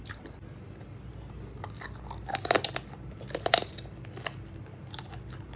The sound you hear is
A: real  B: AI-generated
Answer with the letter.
A